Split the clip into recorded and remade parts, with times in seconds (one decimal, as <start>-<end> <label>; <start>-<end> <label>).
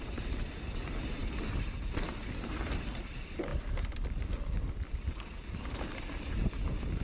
0.0-7.0 recorded